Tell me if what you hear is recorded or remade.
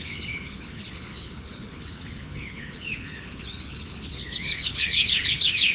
remade